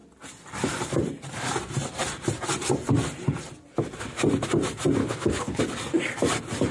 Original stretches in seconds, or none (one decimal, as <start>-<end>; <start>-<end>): 0.0-5.0; 5.6-6.7